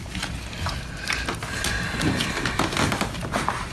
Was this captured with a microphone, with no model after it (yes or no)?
yes